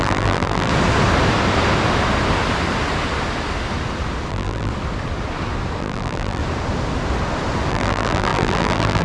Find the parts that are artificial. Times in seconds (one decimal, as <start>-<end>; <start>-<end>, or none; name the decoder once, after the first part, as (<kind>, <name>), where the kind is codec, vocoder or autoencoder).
0.0-0.7 (vocoder, BigVGAN v2); 4.3-4.7; 5.8-6.4; 7.7-9.0